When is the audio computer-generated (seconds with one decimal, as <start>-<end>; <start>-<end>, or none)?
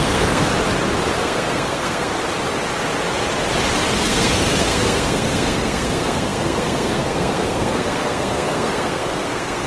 0.0-0.5; 1.1-2.1; 4.0-9.7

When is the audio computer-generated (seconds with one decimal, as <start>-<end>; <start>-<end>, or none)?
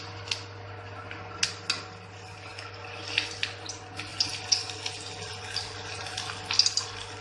none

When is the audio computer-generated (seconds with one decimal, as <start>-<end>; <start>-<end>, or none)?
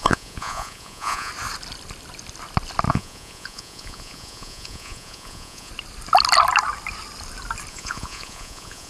0.0-1.3; 2.9-5.7; 7.7-8.9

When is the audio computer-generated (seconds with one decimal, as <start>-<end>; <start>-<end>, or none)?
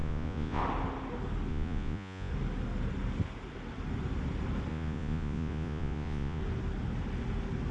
0.0-0.6; 1.5-2.3; 4.7-6.4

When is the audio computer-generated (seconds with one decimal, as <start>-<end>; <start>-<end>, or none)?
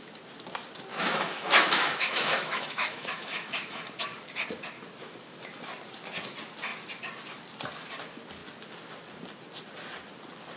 0.9-3.8